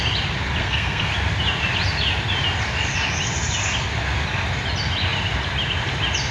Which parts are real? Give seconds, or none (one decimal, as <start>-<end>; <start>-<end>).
0.0-0.6; 1.1-6.3